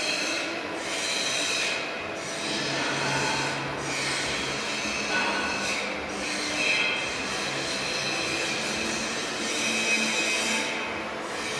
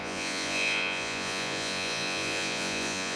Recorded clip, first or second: first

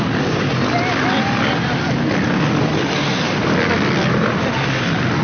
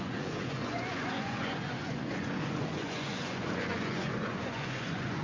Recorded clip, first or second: first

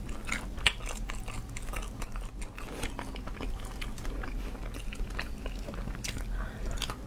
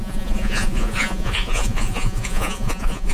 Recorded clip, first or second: first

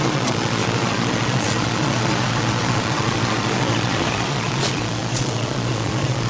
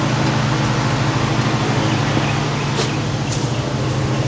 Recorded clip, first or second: second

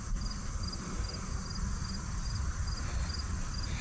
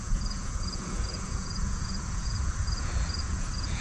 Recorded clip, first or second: first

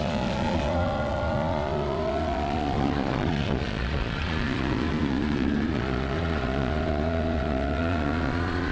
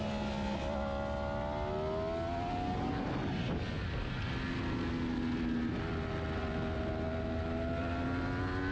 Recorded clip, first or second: second